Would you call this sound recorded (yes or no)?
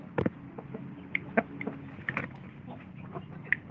yes